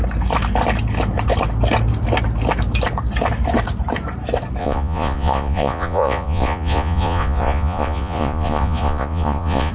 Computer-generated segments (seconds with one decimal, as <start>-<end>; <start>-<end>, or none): 4.6-9.7